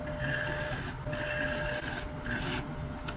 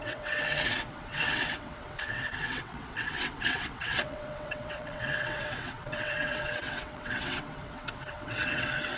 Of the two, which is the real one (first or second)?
first